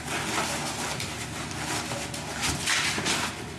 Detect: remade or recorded recorded